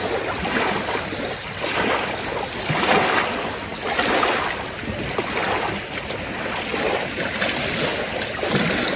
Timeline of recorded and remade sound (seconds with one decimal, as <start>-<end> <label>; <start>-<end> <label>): 0.0-9.0 recorded